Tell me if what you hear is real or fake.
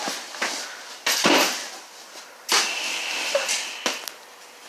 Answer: real